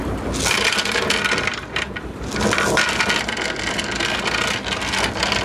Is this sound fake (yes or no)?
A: no